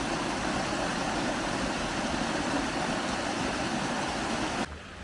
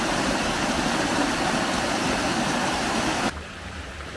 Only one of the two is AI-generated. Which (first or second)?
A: second